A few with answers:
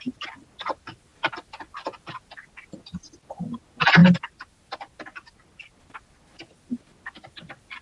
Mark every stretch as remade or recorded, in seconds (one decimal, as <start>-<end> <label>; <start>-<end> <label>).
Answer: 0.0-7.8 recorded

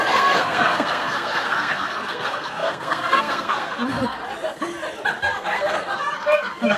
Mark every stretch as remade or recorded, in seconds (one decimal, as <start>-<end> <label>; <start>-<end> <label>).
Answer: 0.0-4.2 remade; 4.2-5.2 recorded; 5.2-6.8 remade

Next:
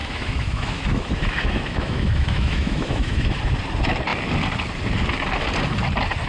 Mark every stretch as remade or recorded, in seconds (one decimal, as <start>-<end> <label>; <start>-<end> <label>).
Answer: 0.0-3.4 remade; 3.4-6.3 recorded

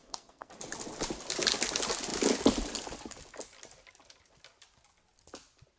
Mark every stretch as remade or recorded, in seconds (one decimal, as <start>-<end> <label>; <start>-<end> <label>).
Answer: 0.0-0.5 remade; 0.5-5.8 recorded